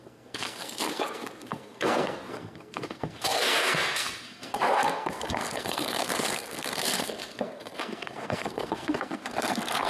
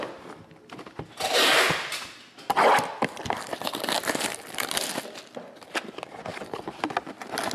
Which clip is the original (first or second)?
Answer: second